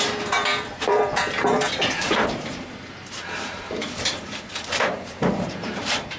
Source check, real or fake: fake